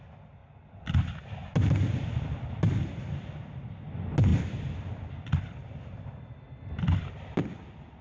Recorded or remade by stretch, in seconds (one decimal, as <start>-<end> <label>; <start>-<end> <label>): 0.0-8.0 recorded